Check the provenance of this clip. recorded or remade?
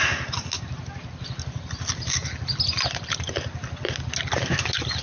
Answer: recorded